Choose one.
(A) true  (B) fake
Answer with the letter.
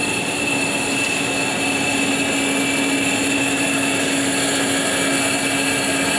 A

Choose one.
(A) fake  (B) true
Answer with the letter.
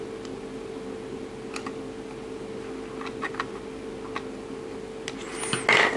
B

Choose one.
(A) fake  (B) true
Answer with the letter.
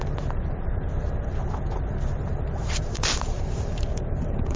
A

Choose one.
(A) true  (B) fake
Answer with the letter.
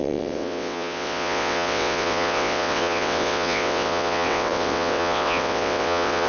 B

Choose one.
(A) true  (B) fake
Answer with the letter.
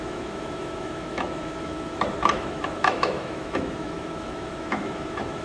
B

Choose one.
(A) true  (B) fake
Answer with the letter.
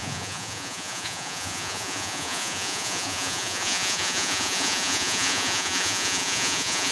B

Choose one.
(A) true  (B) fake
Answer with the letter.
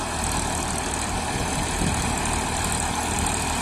A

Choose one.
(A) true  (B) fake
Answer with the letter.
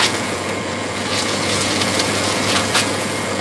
B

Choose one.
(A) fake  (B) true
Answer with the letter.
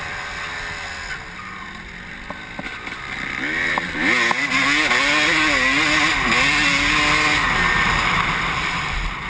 B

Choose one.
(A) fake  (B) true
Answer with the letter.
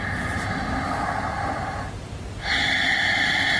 B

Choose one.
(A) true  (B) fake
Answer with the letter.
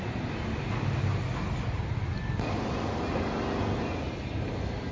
A